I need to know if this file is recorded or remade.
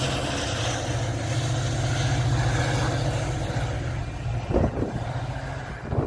recorded